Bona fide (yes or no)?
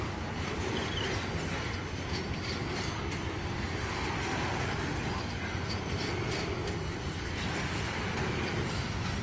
yes